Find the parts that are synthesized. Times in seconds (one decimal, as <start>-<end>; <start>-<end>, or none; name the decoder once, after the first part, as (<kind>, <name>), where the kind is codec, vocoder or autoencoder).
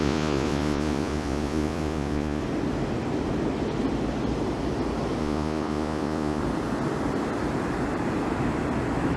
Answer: 0.0-2.4 (vocoder, Vocos); 5.2-6.4